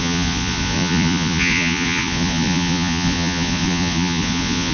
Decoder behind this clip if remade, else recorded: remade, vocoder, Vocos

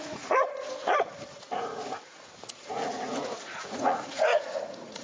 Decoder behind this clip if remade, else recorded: remade, vocoder, Vocos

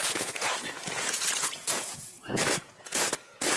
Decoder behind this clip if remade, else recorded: remade, vocoder, Vocos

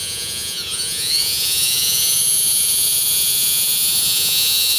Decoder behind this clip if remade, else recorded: remade, vocoder, Vocos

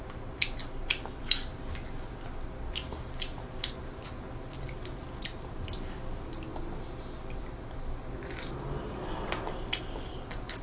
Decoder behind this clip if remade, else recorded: recorded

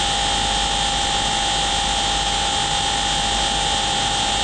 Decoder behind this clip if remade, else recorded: recorded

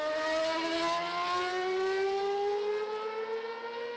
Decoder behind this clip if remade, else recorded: recorded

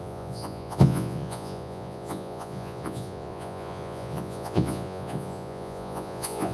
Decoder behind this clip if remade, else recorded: remade, vocoder, Vocos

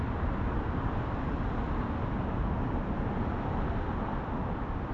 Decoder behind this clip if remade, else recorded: recorded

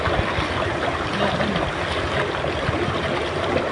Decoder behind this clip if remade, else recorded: recorded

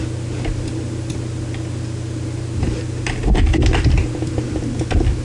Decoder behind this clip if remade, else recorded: recorded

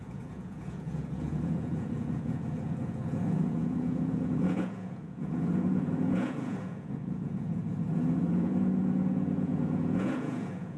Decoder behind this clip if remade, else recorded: remade, vocoder, Vocos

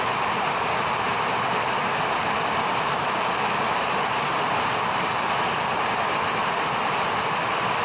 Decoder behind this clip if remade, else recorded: recorded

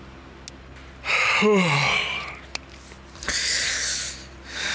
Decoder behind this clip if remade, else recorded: recorded